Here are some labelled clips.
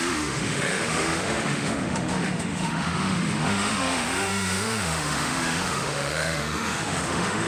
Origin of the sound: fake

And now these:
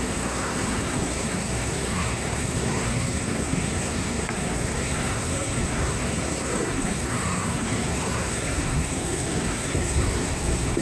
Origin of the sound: fake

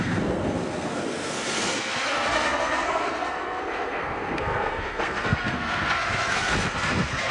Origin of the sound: fake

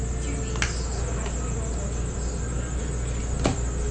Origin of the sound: real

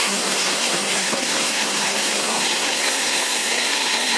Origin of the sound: fake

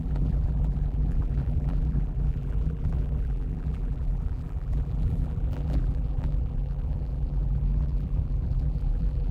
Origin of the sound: fake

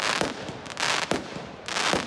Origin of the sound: real